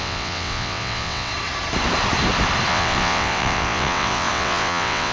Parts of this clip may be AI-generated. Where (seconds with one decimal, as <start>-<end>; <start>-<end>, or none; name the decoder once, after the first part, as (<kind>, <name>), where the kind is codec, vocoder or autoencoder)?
0.0-1.3 (vocoder, WaveNeXt); 2.7-5.1